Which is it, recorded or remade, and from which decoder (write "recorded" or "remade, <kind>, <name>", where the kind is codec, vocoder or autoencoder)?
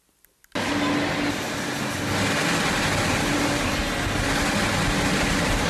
recorded